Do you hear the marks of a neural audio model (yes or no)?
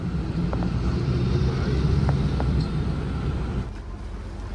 no